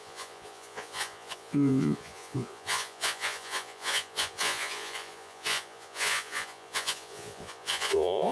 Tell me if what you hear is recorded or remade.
remade